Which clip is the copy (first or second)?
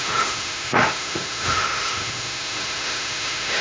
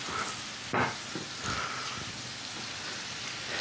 first